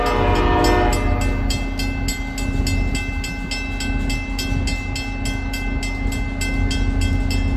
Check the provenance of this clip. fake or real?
real